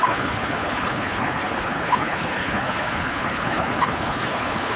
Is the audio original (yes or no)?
no